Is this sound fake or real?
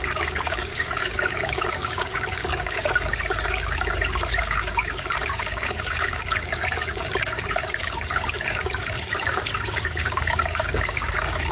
fake